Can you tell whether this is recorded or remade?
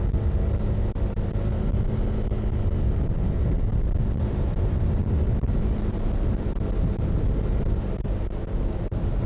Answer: recorded